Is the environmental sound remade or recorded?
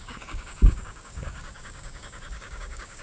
remade